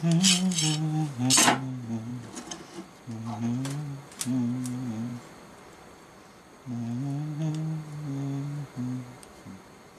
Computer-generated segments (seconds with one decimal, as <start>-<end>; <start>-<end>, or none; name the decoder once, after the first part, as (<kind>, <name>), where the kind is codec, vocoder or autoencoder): none